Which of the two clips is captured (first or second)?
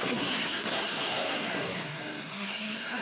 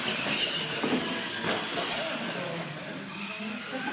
second